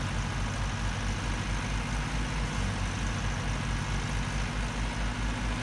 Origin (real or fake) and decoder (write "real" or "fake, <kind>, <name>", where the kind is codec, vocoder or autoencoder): real